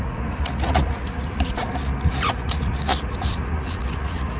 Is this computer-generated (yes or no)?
yes